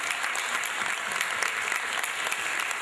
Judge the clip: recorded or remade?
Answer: recorded